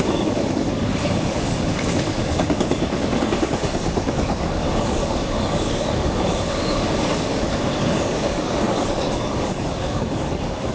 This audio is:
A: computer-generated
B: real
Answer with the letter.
A